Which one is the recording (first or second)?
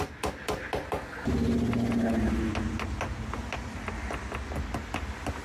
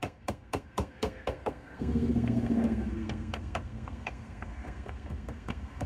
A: first